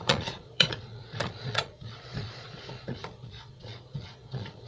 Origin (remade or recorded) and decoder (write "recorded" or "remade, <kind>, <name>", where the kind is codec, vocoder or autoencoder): remade, vocoder, Vocos